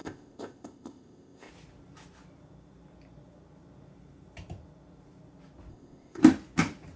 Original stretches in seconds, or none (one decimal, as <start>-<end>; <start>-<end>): 1.5-5.7; 6.2-7.0